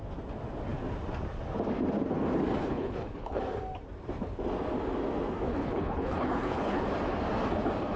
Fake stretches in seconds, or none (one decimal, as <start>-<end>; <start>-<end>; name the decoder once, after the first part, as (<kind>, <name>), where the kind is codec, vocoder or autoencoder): 2.6-3.4 (codec, HILCodec); 5.5-6.8

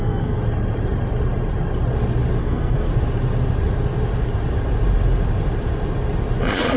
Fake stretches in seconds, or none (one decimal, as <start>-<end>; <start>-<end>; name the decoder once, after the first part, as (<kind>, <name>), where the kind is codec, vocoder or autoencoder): 0.0-0.4 (codec, SNAC); 2.4-2.9

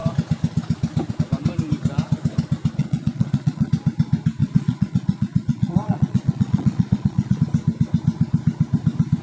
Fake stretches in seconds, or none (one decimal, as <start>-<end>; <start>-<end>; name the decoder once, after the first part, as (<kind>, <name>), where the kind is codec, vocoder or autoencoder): 2.8-3.7 (vocoder, Vocos); 4.4-7.4

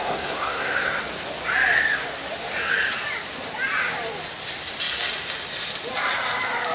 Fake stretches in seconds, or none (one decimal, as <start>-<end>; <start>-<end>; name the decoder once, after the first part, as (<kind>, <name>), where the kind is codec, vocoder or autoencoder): 0.0-1.0 (codec, SNAC)

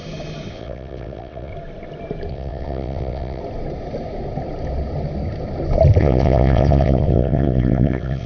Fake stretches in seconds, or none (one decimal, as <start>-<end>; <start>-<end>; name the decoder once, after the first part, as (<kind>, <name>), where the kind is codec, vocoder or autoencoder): 0.5-1.5 (vocoder, WaveNeXt); 2.3-3.4; 6.0-8.3

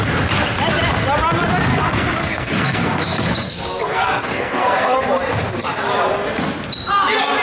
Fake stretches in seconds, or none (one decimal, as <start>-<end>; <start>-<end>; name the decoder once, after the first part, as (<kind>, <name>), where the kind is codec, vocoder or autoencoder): 1.7-5.0 (codec, SNAC)